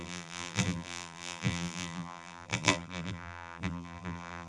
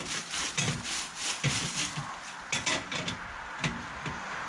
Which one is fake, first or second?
first